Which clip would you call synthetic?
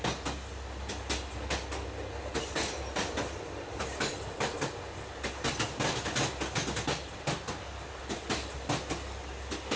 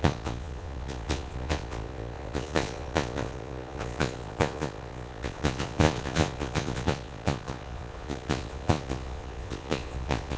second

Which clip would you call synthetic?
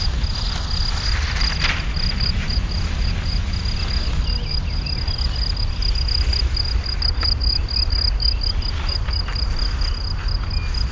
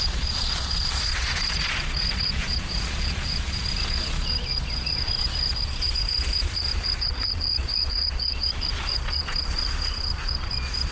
second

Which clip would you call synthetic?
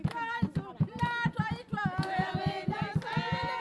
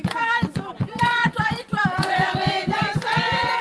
second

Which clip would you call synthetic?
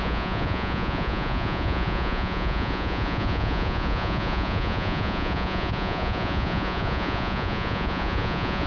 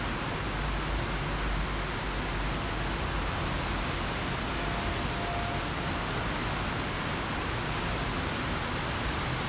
first